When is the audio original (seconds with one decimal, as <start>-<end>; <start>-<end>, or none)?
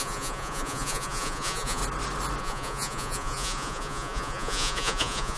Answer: 1.8-2.4